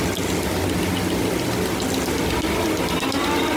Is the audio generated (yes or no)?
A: no